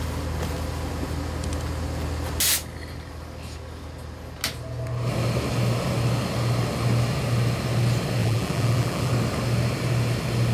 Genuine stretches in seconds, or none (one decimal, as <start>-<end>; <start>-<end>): 0.0-8.2; 9.1-10.5